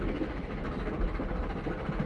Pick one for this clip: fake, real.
real